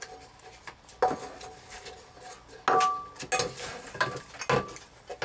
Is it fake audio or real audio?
real